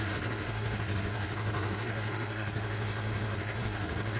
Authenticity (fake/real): fake